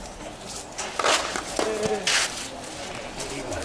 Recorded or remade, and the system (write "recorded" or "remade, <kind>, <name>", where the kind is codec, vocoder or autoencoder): recorded